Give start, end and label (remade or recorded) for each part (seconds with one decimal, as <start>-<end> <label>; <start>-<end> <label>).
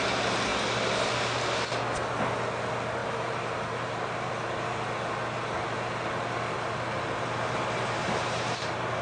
0.0-3.0 recorded; 3.0-4.3 remade; 4.3-8.0 recorded; 8.0-8.5 remade; 8.5-9.0 recorded